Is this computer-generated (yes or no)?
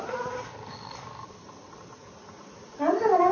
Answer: no